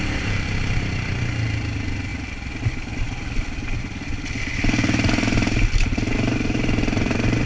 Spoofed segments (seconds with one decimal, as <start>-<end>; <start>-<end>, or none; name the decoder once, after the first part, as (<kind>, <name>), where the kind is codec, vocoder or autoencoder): none